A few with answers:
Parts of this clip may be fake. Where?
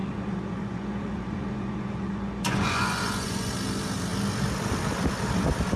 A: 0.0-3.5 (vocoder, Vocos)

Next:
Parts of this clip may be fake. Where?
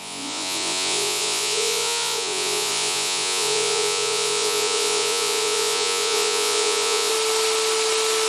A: 0.0-7.1 (vocoder, Vocos)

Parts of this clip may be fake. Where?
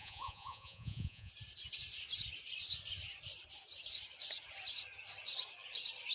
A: 0.0-1.3 (vocoder, Vocos)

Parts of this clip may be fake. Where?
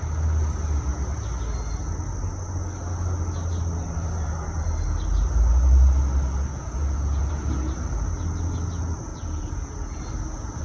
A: 6.5-7.3 (vocoder, Vocos); 9.1-10.0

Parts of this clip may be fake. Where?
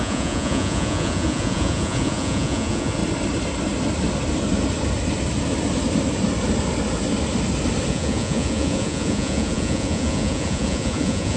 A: 0.0-3.0 (vocoder, Vocos); 7.9-11.4